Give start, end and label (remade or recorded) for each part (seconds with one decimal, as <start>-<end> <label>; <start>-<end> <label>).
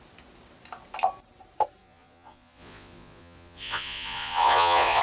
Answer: 0.0-1.8 recorded; 1.8-5.0 remade